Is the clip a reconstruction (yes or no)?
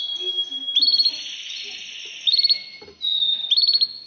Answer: no